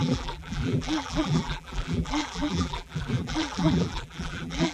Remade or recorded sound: remade